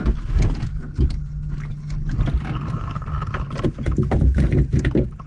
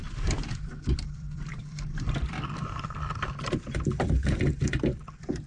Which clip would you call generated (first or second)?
second